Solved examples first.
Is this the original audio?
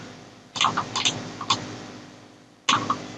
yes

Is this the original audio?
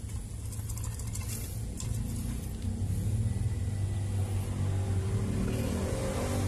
yes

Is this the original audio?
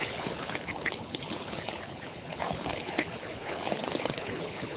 no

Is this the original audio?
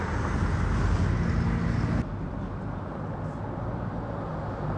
yes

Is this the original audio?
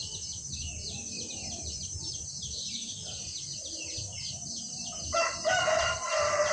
yes